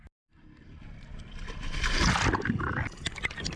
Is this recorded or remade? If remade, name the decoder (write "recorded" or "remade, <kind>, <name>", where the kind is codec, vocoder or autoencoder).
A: recorded